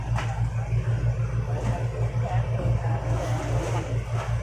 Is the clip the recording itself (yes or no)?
yes